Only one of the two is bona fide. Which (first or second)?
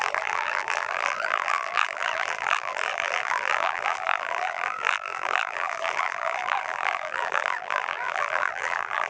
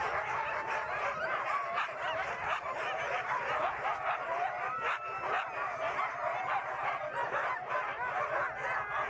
second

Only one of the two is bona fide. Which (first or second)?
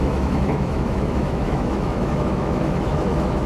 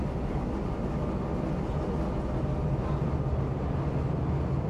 second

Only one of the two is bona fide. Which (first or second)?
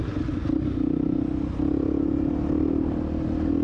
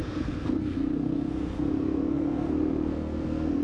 first